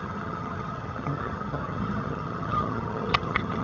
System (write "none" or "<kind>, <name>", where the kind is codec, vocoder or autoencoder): vocoder, HiFi-GAN